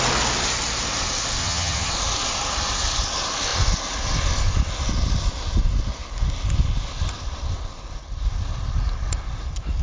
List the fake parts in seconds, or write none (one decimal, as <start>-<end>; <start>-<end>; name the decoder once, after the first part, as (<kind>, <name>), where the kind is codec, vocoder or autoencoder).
1.4-1.9 (vocoder, HiFi-GAN)

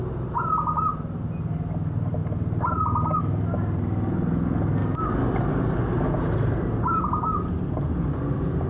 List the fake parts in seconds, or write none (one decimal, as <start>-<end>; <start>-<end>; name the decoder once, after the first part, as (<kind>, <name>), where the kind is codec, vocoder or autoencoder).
none

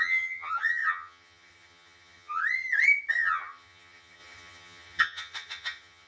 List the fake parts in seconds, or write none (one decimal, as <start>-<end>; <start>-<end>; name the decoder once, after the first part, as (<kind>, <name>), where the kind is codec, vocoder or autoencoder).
0.0-2.4 (vocoder, HiFi-GAN); 3.1-6.1

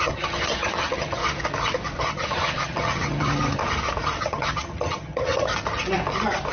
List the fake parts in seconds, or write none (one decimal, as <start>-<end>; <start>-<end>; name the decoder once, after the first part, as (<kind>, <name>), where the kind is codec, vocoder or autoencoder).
0.0-1.2 (vocoder, HiFi-GAN); 2.0-3.6; 4.2-5.5

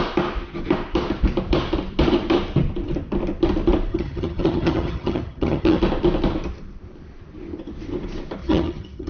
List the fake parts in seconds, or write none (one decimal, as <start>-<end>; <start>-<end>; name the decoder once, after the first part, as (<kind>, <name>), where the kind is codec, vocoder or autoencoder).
3.9-5.8 (vocoder, HiFi-GAN); 8.4-9.1